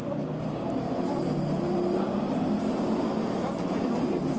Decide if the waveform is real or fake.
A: fake